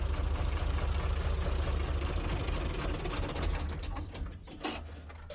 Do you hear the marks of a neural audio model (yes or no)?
no